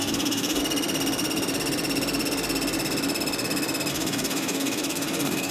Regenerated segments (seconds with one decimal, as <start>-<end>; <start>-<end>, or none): 0.0-0.6; 3.9-5.5